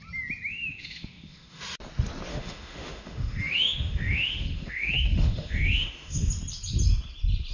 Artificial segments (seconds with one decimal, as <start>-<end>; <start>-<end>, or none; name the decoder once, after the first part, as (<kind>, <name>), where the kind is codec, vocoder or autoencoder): 0.5-1.6 (autoencoder, DAC-VAE); 2.3-6.3